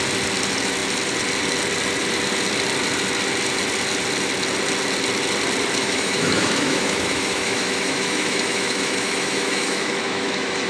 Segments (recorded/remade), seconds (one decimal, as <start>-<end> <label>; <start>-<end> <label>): 0.0-5.8 recorded; 5.8-10.7 remade